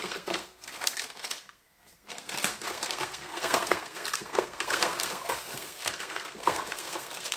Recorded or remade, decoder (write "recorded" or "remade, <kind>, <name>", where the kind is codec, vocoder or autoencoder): remade, codec, SNAC